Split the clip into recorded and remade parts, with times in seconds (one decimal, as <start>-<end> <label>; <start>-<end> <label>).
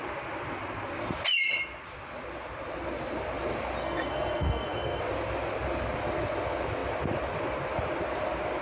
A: 0.0-3.8 recorded; 3.8-5.0 remade; 5.0-8.6 recorded